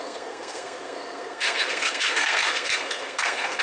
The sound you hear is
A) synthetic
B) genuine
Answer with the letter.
A